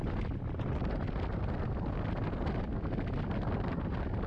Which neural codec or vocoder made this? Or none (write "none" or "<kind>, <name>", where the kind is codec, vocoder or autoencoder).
none